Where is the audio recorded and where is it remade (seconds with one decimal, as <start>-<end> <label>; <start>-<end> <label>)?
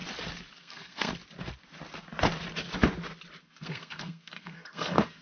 0.0-0.6 recorded; 0.6-1.1 remade; 1.1-3.4 recorded; 3.4-5.2 remade